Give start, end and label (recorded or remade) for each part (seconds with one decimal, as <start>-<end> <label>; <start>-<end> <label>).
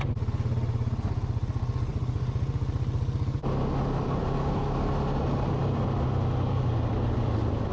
0.0-7.7 recorded